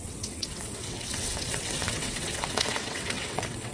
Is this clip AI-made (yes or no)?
yes